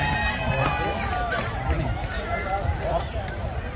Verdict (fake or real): fake